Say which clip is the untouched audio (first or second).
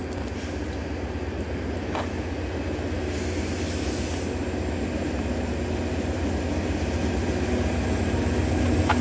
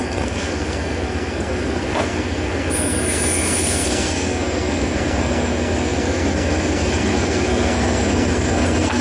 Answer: first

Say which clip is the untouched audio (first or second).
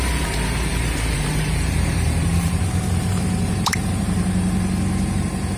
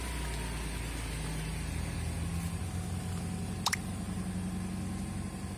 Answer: second